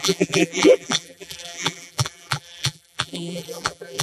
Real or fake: fake